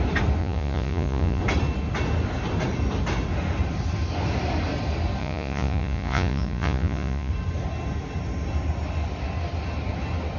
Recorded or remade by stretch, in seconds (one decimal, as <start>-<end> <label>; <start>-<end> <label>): 0.0-0.4 recorded; 0.4-1.4 remade; 1.4-5.2 recorded; 5.2-7.3 remade; 7.3-10.4 recorded